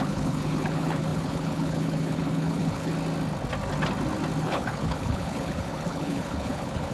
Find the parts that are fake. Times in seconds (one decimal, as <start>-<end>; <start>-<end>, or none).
0.0-2.9; 4.4-6.9